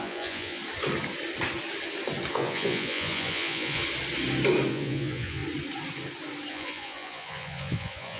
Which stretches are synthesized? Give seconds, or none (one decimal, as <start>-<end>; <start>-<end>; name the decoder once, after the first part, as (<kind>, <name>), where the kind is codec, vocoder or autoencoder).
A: 0.0-0.6 (vocoder, Vocos); 2.3-3.8; 4.7-5.4; 6.5-8.2